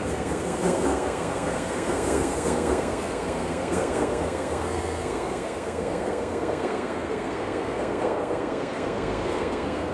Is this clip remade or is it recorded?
remade